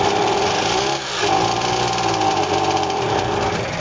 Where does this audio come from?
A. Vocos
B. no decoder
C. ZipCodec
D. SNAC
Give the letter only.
B